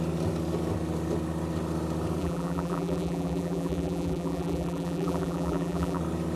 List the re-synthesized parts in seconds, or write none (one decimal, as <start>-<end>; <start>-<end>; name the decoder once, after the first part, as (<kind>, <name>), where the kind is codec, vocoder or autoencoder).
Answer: 2.2-6.0 (vocoder, BigVGAN v2)